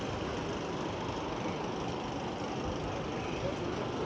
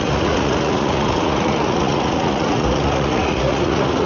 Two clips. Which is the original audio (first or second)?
first